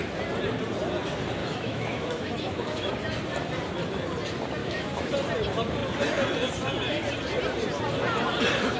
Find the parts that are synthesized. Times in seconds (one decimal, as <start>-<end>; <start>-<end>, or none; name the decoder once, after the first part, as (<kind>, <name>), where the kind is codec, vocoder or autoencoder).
1.4-2.9 (autoencoder, DAC-VAE); 4.6-5.1